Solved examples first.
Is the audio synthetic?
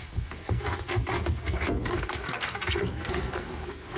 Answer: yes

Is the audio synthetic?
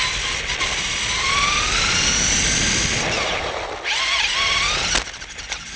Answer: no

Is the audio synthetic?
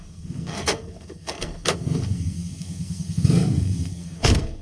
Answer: yes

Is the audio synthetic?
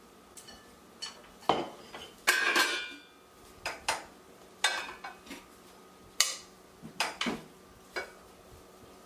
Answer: no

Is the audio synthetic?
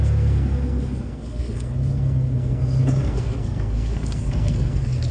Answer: yes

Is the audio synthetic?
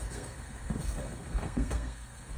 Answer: yes